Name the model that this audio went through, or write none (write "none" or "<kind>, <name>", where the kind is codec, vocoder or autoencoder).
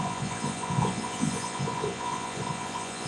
vocoder, Vocos